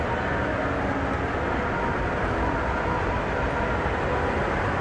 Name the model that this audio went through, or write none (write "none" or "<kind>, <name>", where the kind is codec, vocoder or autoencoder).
none